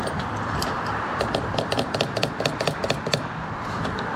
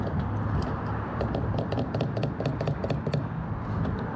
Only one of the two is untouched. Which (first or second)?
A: second